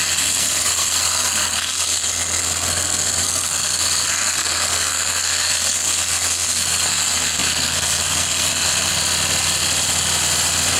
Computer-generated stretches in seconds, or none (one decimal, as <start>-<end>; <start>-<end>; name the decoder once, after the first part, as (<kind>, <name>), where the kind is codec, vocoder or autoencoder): 0.0-8.9 (codec, SNAC)